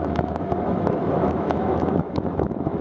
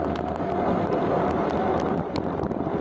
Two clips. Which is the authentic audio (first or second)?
second